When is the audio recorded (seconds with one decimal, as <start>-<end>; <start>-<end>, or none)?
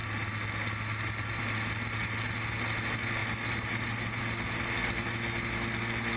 0.0-6.2